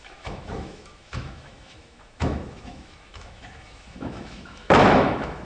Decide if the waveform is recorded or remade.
remade